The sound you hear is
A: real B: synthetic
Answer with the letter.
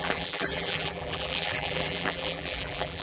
B